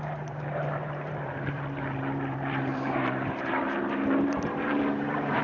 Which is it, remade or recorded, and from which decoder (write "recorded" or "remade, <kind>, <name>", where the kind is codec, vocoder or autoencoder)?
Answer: remade, vocoder, BigVGAN v2